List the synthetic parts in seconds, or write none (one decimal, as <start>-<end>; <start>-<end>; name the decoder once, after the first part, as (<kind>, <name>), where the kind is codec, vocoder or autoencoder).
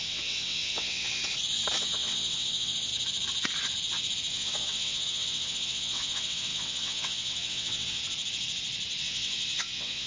0.0-1.2 (vocoder, WaveNeXt); 1.8-2.9; 4.3-8.0; 9.0-10.1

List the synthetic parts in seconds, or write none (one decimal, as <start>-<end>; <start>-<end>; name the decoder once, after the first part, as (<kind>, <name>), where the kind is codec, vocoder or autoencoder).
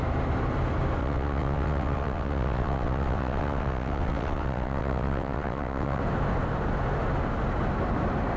1.0-6.0 (vocoder, WaveNeXt)